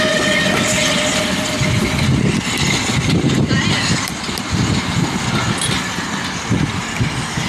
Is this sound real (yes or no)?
yes